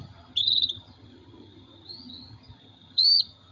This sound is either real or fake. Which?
fake